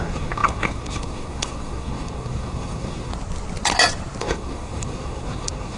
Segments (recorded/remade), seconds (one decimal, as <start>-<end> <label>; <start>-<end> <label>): 0.0-3.1 remade; 3.1-4.2 recorded; 4.2-5.8 remade